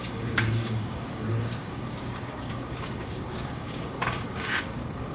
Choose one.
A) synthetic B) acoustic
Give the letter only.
A